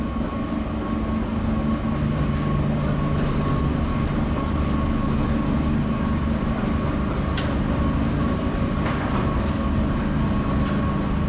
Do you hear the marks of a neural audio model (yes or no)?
no